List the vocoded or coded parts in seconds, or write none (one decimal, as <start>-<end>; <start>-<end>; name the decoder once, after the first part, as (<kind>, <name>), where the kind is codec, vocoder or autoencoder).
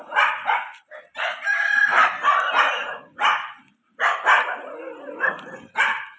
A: none